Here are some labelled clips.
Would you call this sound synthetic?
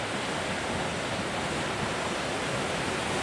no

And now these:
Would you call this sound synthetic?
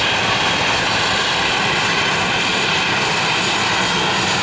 no